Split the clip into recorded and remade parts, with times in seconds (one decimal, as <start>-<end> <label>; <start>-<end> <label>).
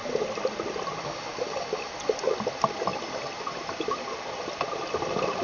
0.0-5.4 recorded